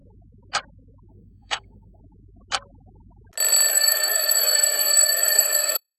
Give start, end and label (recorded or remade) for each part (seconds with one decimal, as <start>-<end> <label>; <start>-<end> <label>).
0.0-1.1 recorded; 1.1-2.0 remade; 2.0-3.7 recorded; 3.7-6.0 remade